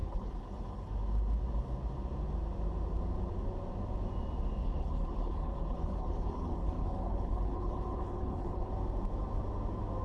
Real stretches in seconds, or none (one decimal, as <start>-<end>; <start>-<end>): 0.9-4.6; 8.7-10.0